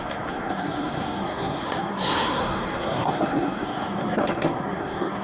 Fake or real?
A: fake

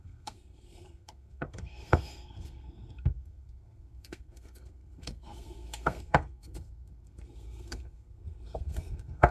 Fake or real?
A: fake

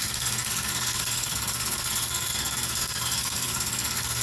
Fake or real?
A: fake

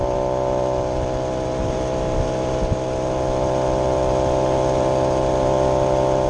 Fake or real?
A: real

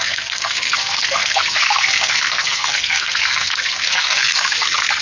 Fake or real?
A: fake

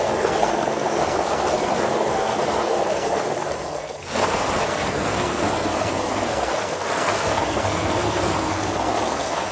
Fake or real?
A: fake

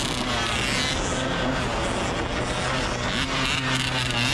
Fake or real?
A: real